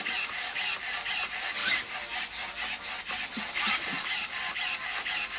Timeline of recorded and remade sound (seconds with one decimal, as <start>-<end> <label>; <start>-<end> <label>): 0.0-5.4 remade

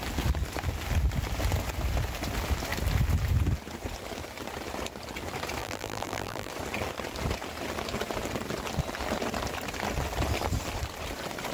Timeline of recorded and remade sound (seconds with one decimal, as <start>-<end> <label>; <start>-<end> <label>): 0.0-5.6 recorded; 5.6-6.5 remade; 6.5-11.5 recorded

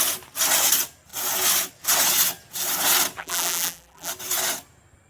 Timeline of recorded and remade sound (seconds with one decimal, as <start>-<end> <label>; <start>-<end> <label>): 0.0-3.2 recorded; 3.2-4.1 remade; 4.1-5.1 recorded

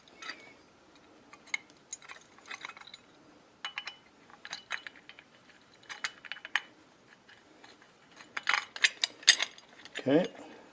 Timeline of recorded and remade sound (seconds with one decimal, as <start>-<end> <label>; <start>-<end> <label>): 0.0-4.3 recorded; 4.3-5.1 remade; 5.1-10.7 recorded